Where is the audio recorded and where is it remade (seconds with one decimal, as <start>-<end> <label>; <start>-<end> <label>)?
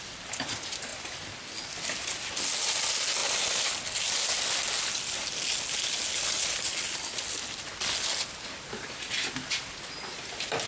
0.0-10.7 recorded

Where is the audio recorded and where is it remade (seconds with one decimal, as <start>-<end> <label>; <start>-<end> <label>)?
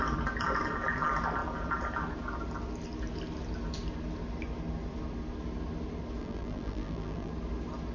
0.0-6.2 recorded; 6.2-7.3 remade; 7.3-7.9 recorded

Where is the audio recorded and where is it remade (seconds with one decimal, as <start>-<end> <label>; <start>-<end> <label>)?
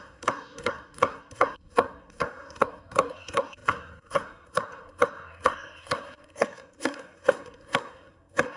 0.0-8.6 remade